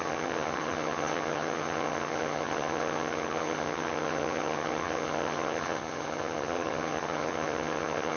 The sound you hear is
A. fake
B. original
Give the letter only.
A